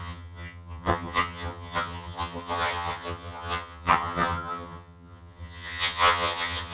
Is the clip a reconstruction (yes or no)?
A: yes